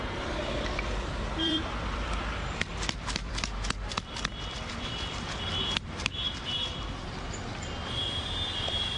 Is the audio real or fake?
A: fake